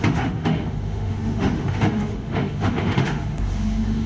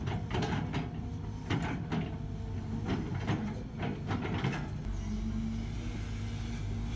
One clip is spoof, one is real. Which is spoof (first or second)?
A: first